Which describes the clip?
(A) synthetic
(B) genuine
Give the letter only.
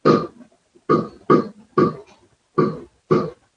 B